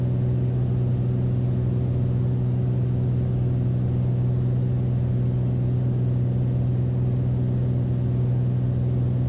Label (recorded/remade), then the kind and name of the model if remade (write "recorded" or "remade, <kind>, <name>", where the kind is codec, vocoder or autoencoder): recorded